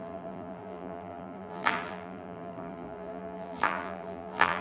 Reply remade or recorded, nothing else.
remade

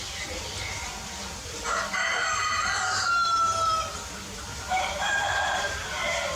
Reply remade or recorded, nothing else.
recorded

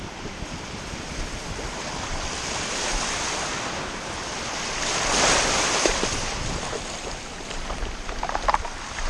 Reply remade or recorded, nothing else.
remade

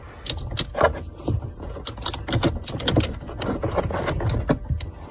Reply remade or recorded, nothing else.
recorded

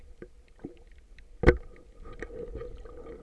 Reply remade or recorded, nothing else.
recorded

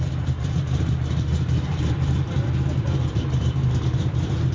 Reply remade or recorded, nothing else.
remade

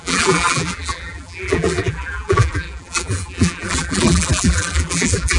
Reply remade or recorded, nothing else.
remade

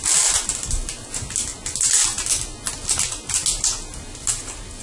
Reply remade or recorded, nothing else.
recorded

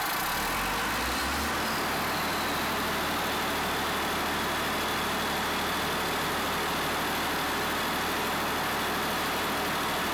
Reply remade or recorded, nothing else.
recorded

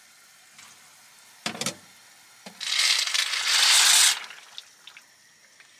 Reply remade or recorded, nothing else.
recorded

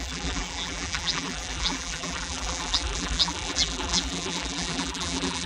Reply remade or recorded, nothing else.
remade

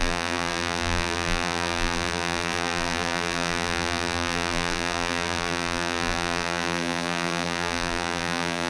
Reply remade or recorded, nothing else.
remade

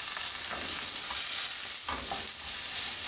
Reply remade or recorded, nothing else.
remade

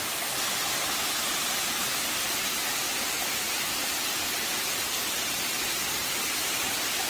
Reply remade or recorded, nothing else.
recorded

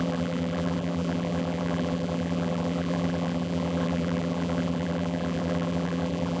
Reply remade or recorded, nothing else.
remade